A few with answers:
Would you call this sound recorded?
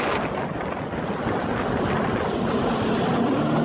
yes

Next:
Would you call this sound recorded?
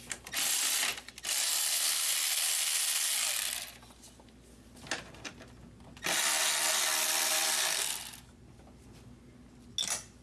yes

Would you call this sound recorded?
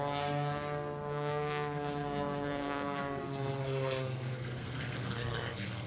no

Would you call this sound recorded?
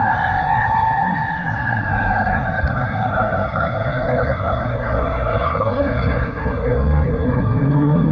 no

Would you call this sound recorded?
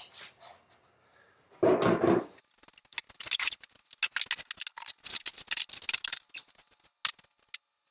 yes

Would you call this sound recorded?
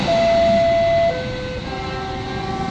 yes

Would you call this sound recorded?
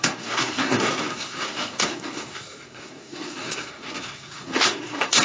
no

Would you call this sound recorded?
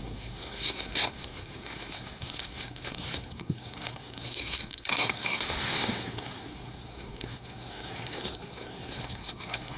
no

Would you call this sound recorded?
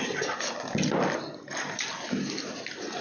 yes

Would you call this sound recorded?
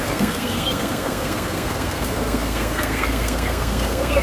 no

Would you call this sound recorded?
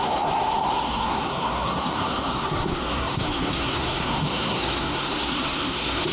no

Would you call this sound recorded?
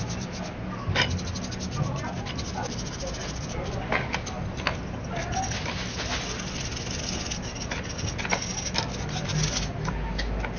yes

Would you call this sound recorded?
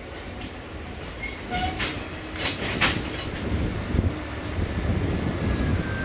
yes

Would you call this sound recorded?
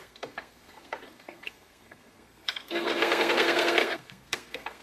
no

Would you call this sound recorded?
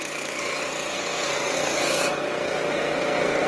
no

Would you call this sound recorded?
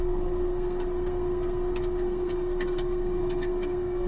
no